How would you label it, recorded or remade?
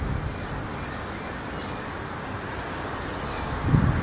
recorded